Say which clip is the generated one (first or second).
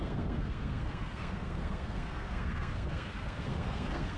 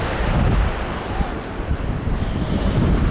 first